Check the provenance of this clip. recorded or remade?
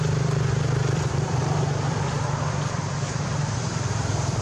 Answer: remade